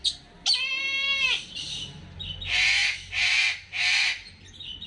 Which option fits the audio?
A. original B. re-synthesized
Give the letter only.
A